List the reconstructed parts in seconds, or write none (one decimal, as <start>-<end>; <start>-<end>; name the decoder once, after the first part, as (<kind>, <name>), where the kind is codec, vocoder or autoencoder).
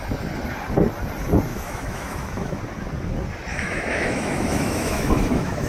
1.5-2.6 (autoencoder, DAC-VAE); 3.5-5.7